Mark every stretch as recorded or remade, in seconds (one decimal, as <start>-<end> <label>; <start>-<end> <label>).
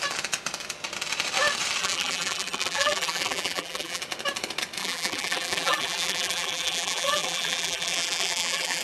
0.0-1.8 recorded; 1.8-4.0 remade; 4.0-4.8 recorded; 4.8-8.8 remade